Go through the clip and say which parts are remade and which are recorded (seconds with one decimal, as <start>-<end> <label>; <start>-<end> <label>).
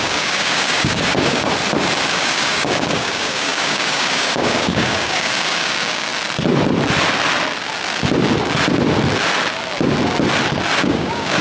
0.0-1.5 remade; 1.5-2.1 recorded; 2.1-6.1 remade; 6.1-10.8 recorded; 10.8-11.4 remade